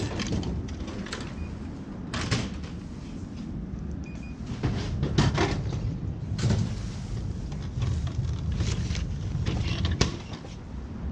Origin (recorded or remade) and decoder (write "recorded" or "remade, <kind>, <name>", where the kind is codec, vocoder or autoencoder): recorded